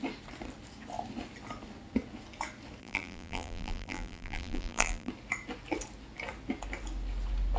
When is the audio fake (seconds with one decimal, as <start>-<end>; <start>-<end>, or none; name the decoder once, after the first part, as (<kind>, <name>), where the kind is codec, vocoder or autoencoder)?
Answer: 2.8-5.1 (vocoder, BigVGAN v2)

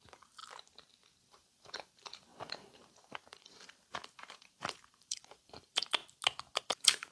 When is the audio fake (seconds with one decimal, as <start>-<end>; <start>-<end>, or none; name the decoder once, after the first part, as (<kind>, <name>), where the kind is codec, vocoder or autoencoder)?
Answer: 0.0-0.4 (vocoder, BigVGAN v2); 1.2-6.0; 6.6-7.1

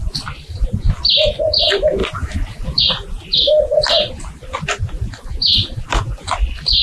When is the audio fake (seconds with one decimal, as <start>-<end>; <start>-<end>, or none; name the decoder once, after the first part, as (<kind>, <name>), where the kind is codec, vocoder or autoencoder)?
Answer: none

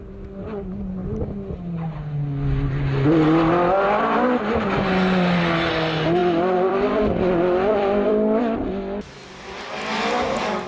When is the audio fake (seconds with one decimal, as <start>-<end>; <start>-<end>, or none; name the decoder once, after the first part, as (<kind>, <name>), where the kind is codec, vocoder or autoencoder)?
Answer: 6.2-7.0 (vocoder, BigVGAN v2); 7.7-8.4

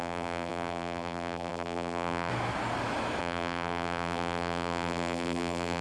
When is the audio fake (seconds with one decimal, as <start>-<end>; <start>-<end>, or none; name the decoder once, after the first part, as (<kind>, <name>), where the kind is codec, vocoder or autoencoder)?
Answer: 0.0-2.3 (vocoder, BigVGAN v2); 3.2-5.8

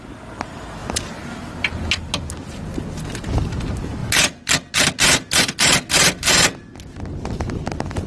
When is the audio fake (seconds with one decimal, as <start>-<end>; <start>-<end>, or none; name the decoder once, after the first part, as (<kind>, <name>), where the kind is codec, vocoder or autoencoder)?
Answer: 0.8-1.5 (vocoder, BigVGAN v2)

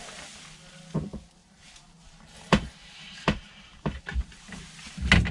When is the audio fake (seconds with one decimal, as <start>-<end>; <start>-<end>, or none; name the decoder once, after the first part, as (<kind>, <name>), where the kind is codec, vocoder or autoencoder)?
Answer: 1.4-4.6 (vocoder, BigVGAN v2)